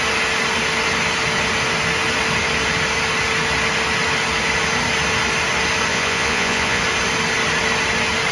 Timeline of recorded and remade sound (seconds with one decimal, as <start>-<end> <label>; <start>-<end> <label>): 0.0-5.9 recorded; 5.9-6.8 remade; 6.8-8.3 recorded